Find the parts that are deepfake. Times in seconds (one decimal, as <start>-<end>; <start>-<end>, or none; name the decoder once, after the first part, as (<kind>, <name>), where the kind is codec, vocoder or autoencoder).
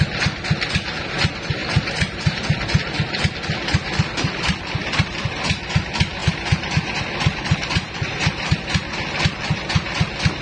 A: 1.6-2.4 (vocoder, BigVGAN v2); 6.2-8.7